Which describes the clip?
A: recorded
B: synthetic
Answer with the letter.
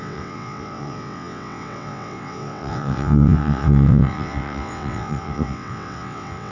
B